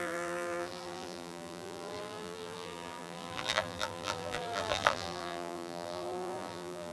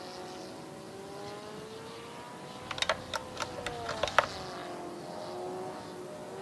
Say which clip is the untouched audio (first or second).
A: second